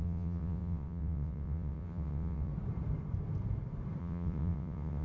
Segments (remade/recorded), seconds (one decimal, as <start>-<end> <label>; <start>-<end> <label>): 0.0-2.5 remade; 2.5-4.0 recorded; 4.0-5.0 remade